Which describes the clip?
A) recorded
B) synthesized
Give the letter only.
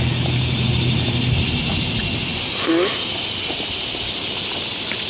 A